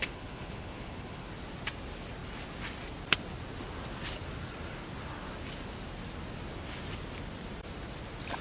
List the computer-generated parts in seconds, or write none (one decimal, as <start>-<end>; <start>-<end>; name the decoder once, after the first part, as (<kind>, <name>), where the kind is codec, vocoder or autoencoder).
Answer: 0.0-1.3 (codec, HILCodec)